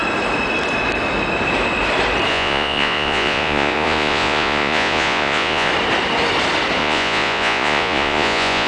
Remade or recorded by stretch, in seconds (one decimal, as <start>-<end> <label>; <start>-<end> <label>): 0.0-2.3 recorded; 2.3-5.7 remade; 5.7-6.8 recorded; 6.8-8.7 remade